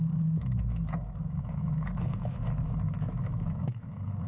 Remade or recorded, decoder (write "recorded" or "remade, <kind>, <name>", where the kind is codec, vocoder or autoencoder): remade, autoencoder, DAC-VAE